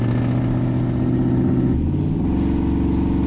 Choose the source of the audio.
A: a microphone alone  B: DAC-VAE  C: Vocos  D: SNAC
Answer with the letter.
A